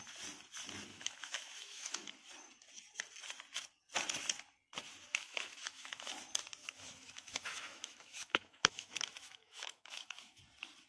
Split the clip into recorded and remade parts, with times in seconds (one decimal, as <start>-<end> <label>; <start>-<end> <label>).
0.0-0.9 recorded; 0.9-2.1 remade; 2.1-5.1 recorded; 5.1-6.1 remade; 6.1-6.6 recorded; 6.6-10.4 remade; 10.4-10.9 recorded